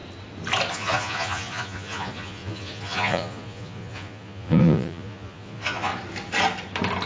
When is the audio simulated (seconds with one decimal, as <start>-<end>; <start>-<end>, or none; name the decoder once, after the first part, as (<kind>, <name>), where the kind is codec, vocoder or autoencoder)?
0.7-5.9 (vocoder, Vocos)